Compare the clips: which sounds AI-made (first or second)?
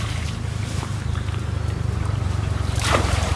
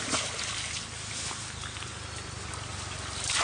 first